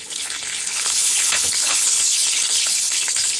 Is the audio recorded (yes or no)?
no